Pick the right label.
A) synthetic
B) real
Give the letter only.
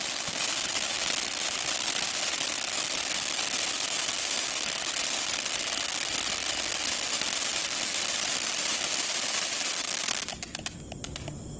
B